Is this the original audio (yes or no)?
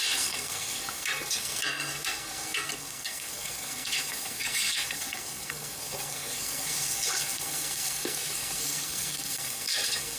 no